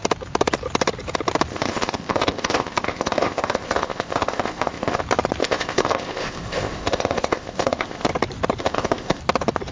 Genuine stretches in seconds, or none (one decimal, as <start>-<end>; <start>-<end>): 0.0-1.5; 5.0-5.4; 8.1-8.6; 9.2-9.7

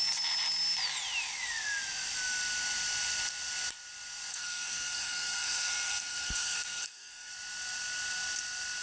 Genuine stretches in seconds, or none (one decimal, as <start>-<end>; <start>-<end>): 0.0-4.3; 7.3-8.8

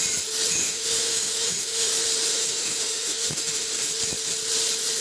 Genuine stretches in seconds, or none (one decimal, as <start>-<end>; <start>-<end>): 0.0-0.6; 1.9-2.3; 3.9-5.0

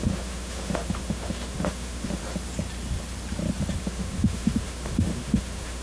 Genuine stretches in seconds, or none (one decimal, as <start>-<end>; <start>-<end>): 2.2-3.8

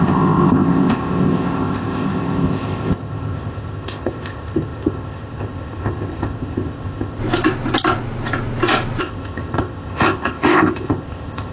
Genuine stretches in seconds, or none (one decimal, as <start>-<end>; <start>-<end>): 7.2-9.0

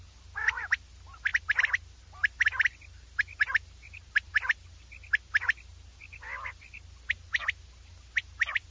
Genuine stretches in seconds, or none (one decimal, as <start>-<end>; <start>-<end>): 0.0-8.7

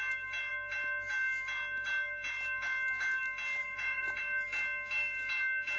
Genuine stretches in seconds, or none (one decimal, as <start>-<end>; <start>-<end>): 0.0-3.6; 4.2-5.8

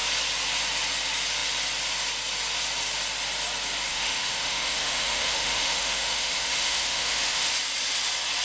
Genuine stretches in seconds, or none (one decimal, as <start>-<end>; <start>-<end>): 0.0-3.9; 7.5-8.4